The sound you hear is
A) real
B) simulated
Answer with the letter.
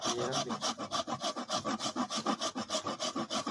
A